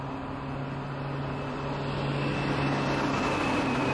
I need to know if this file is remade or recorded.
recorded